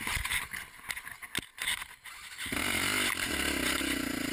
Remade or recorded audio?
recorded